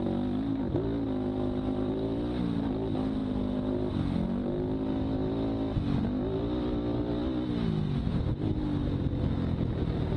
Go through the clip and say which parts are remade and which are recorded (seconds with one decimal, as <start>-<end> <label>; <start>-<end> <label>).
0.0-10.2 recorded